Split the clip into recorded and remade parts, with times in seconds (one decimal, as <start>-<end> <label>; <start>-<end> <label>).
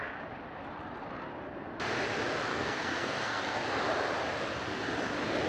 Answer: 0.0-2.5 recorded; 2.5-3.6 remade; 3.6-5.5 recorded